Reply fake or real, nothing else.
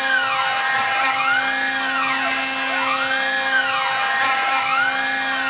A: real